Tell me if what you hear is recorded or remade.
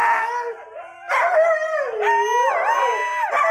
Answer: recorded